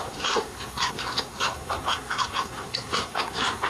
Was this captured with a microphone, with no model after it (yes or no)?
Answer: no